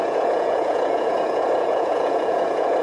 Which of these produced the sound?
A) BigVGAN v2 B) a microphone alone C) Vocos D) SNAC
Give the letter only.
C